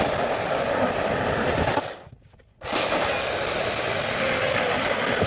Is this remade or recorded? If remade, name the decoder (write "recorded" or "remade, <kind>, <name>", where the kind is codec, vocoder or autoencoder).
recorded